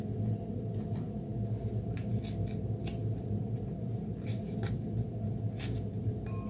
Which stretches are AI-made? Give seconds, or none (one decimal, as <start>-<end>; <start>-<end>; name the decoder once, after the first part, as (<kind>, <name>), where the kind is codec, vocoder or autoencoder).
none